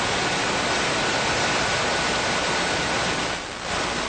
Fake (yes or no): no